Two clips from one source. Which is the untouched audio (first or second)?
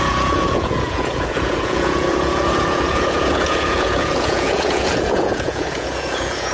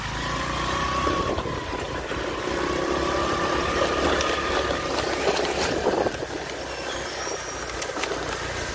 second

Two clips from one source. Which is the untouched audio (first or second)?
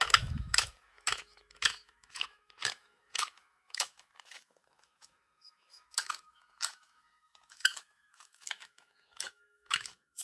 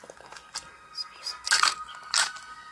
second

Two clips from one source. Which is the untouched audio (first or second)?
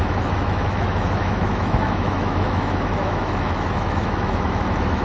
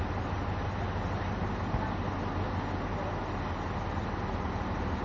second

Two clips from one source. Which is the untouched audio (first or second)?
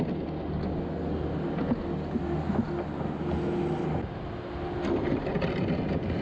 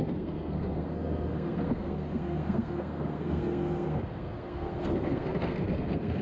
first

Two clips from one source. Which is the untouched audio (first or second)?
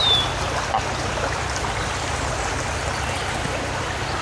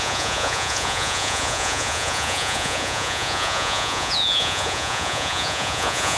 first